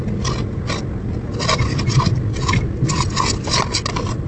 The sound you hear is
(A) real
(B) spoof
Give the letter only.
A